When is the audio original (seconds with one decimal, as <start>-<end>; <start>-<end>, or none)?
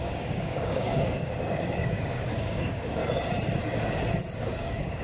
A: 3.0-4.4